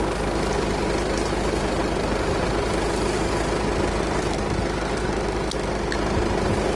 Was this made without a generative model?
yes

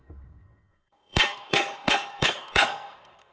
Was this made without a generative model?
no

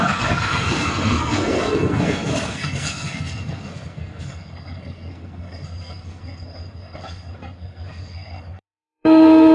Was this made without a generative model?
no